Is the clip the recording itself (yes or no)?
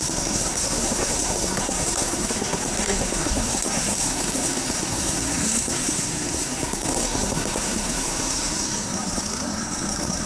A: no